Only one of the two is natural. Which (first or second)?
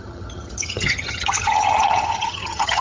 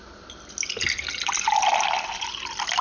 second